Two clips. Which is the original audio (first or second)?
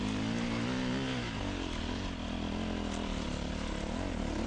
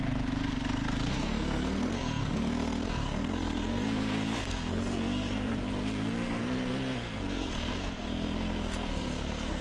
first